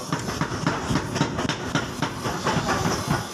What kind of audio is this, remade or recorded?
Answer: recorded